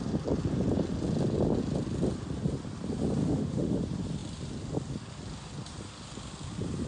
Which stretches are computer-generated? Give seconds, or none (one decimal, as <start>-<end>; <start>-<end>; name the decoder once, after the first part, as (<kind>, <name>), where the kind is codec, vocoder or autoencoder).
3.2-3.8 (autoencoder, DAC-VAE)